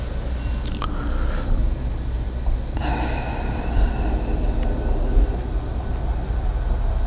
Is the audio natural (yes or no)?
yes